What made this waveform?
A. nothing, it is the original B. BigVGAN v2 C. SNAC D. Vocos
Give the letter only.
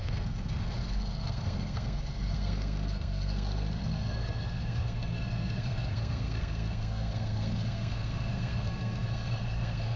C